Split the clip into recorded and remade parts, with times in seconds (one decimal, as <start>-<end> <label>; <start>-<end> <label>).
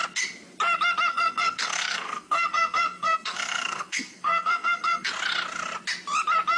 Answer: 0.0-1.1 recorded; 1.1-5.1 remade; 5.1-6.6 recorded